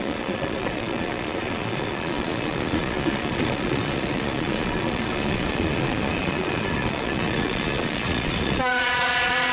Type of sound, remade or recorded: remade